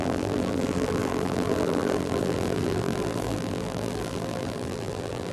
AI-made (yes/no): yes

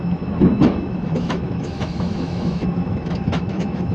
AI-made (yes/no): yes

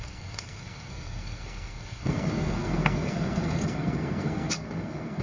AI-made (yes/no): yes